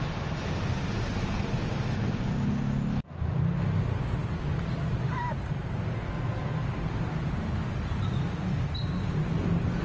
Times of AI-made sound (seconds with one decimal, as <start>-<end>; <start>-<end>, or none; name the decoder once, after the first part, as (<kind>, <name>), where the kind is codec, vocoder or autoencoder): 5.2-6.1 (vocoder, BigVGAN v2); 6.6-8.7